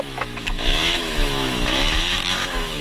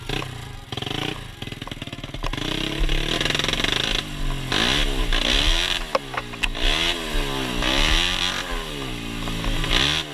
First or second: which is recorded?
second